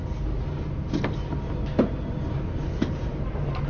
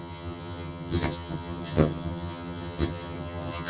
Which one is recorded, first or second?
first